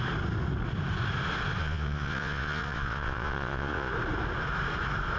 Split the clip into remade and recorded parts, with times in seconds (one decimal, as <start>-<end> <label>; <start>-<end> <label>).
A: 0.0-1.6 recorded; 1.6-3.9 remade; 3.9-5.2 recorded

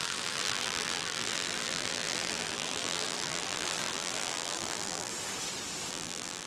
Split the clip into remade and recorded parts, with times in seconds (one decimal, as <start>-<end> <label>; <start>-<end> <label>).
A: 0.0-5.1 remade; 5.1-5.9 recorded; 5.9-6.5 remade

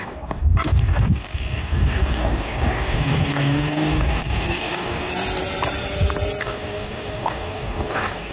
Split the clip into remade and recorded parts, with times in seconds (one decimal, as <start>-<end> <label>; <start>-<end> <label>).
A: 0.0-5.1 remade; 5.1-6.4 recorded; 6.4-8.3 remade

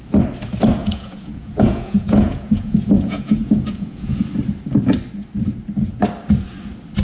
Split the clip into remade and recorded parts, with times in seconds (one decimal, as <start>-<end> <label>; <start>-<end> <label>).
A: 0.0-0.8 recorded; 0.8-4.3 remade; 4.3-7.0 recorded

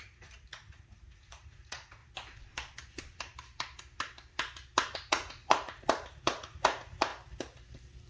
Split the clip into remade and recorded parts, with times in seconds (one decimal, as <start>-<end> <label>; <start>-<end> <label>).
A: 0.0-2.0 remade; 2.0-5.1 recorded; 5.1-7.1 remade; 7.1-8.1 recorded

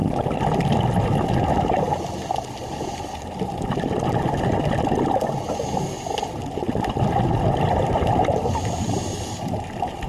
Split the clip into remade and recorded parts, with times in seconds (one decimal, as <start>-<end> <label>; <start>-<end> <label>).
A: 0.0-10.1 recorded